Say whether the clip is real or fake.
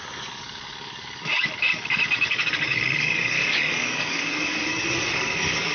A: fake